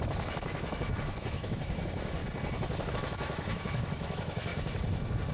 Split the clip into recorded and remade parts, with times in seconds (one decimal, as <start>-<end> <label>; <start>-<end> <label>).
0.0-2.2 remade; 2.2-2.9 recorded; 2.9-4.5 remade; 4.5-5.3 recorded